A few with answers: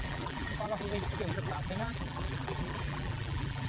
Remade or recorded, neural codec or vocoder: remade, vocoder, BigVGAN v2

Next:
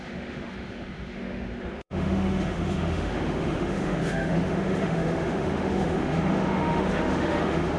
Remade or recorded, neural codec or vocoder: remade, autoencoder, DAC-VAE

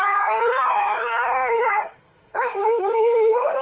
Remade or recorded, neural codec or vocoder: remade, codec, SNAC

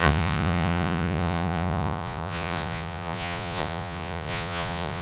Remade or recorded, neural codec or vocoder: remade, vocoder, Vocos